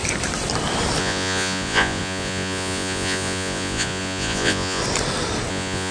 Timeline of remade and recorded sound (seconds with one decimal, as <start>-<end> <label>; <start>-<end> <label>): 0.0-1.0 recorded; 1.0-4.8 remade; 4.8-5.5 recorded; 5.5-5.9 remade